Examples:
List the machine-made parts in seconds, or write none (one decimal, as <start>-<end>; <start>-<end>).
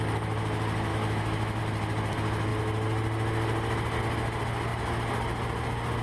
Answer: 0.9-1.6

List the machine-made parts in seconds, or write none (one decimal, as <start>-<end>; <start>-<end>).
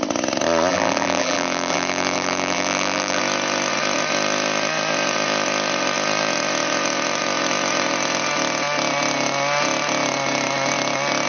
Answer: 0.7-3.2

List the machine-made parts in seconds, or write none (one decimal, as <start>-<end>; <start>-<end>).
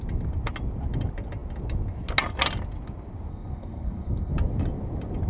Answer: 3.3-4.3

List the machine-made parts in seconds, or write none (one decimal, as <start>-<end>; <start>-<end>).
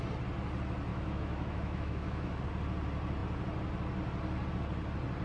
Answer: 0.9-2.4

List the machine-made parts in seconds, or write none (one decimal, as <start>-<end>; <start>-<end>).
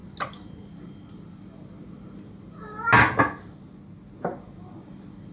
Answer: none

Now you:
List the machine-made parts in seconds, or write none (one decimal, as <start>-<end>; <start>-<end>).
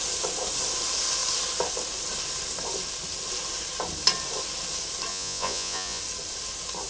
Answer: 5.1-6.0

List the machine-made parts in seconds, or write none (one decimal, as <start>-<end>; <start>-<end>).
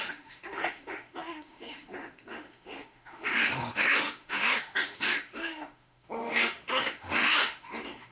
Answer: 0.0-8.1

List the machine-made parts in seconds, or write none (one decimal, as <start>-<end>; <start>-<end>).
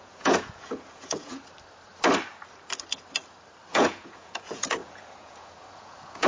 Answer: 0.0-1.4; 3.7-6.3